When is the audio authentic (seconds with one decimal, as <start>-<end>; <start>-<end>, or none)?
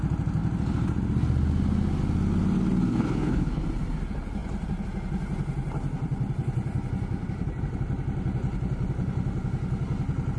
0.0-2.9; 3.6-10.4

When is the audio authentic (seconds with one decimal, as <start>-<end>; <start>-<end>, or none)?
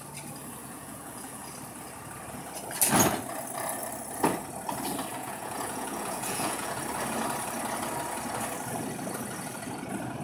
0.0-0.6; 1.5-5.1; 6.8-10.2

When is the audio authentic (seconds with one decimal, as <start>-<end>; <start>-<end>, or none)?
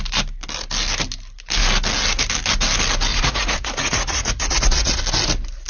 0.0-3.1; 5.0-5.7